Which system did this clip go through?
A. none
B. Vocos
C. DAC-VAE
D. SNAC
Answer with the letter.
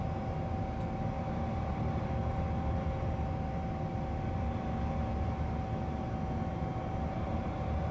A